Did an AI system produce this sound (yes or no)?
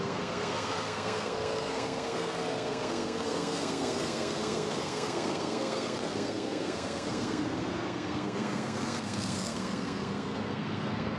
yes